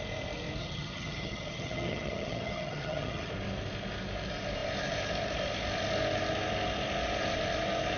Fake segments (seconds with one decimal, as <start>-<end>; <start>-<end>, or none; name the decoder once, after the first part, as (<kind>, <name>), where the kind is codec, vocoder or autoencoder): 0.6-3.3 (vocoder, HiFi-GAN)